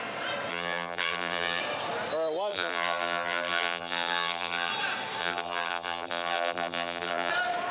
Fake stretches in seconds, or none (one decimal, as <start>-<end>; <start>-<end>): 0.5-1.6; 2.5-4.7; 5.2-7.3